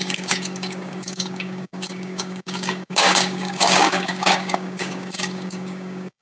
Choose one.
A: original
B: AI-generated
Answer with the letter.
B